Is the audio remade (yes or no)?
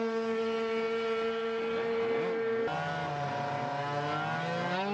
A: no